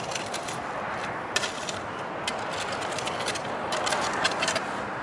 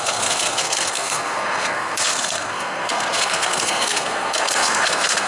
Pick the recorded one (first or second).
first